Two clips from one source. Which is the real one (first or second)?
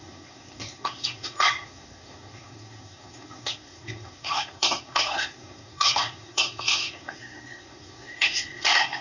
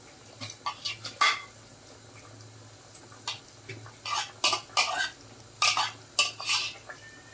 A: second